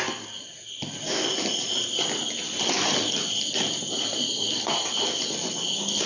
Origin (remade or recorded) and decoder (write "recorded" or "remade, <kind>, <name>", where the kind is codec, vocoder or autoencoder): remade, vocoder, BigVGAN v2